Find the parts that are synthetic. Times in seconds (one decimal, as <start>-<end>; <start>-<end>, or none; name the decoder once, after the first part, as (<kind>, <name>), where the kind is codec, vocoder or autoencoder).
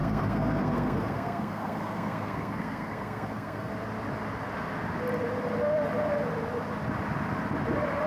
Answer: 0.0-3.7 (codec, SNAC)